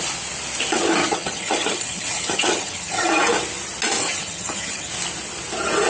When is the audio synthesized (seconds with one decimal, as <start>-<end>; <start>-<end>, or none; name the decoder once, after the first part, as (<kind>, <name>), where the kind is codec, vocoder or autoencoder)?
1.0-3.1 (vocoder, HiFi-GAN); 4.0-4.9